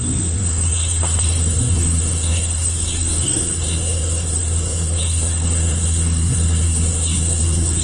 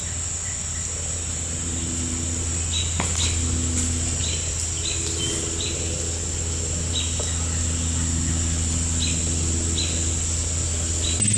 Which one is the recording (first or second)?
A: second